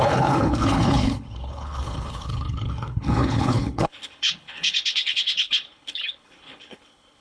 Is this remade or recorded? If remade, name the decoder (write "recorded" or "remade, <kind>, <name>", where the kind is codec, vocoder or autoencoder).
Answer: remade, codec, HILCodec